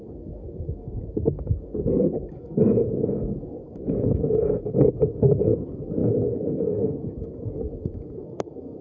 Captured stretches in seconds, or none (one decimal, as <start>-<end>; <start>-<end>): none